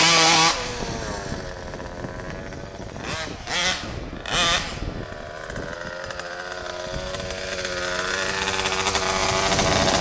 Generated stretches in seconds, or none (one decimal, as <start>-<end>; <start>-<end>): 0.0-0.7; 2.3-3.6; 8.1-10.0